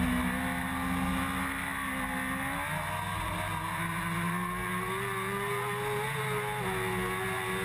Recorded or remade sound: recorded